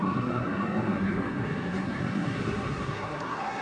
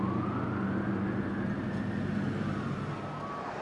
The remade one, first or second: first